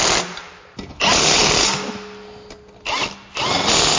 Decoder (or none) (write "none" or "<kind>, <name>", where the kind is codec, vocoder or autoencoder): none